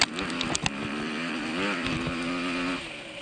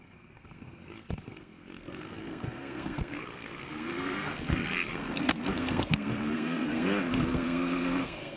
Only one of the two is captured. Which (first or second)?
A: first